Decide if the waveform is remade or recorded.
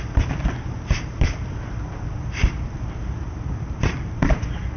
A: remade